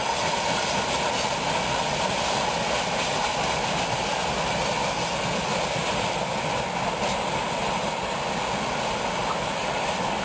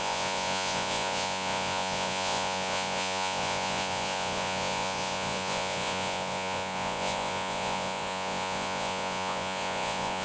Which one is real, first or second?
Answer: first